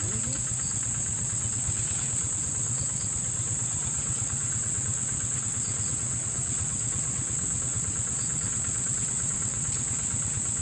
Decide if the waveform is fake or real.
fake